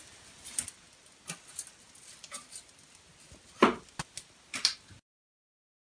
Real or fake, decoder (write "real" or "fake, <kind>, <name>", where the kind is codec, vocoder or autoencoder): real